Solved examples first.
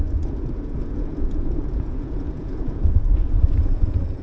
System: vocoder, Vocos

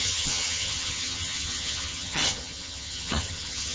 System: vocoder, HiFi-GAN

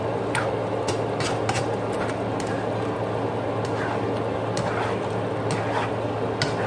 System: none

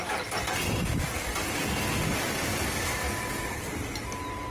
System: none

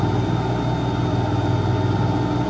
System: none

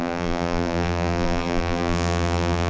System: vocoder, BigVGAN v2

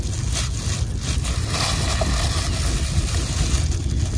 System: none